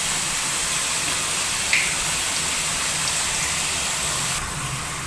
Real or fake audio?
real